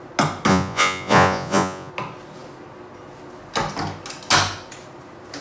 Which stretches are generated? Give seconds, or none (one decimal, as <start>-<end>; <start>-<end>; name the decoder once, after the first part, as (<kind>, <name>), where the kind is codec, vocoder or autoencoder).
0.5-1.9 (vocoder, Vocos)